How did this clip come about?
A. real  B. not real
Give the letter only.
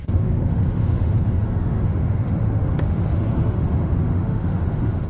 B